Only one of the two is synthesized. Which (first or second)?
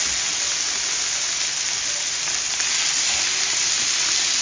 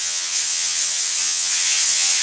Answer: second